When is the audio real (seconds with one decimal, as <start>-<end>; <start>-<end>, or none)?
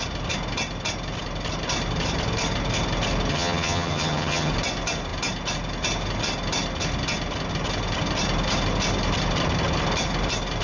0.0-3.3; 4.5-10.6